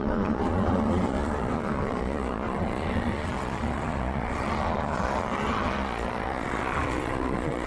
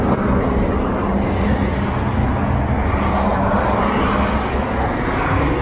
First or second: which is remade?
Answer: first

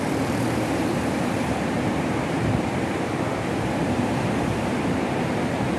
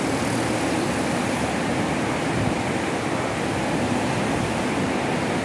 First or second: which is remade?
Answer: first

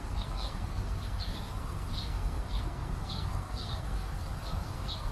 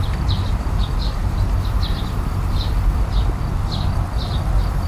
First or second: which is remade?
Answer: first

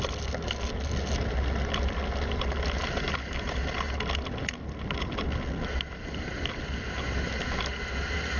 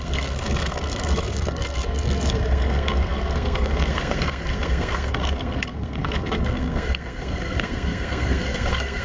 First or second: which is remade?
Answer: second